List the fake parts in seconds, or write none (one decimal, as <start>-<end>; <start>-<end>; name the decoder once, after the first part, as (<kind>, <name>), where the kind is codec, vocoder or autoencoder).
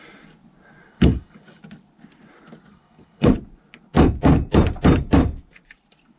0.8-1.6 (codec, HILCodec); 2.7-3.3